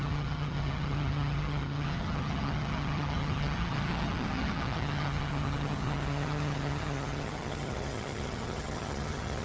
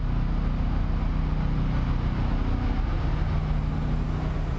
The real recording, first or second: second